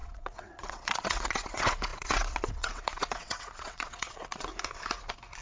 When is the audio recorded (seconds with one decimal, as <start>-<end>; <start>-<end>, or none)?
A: 4.5-5.4